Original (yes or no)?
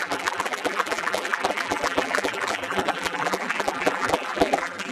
no